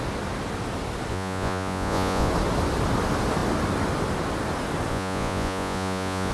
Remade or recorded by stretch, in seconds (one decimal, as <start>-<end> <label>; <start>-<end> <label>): 0.0-1.1 recorded; 1.1-2.3 remade; 2.3-4.9 recorded; 4.9-6.3 remade